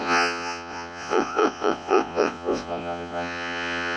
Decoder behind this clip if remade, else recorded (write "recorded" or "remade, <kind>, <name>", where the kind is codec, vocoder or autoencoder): remade, vocoder, Vocos